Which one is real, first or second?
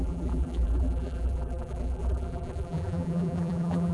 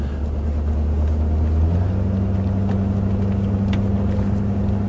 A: second